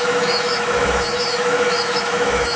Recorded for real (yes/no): no